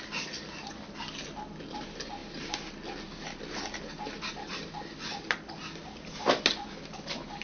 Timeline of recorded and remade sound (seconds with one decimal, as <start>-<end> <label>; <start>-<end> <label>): 0.0-7.4 recorded